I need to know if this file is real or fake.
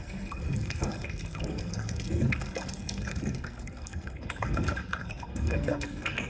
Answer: fake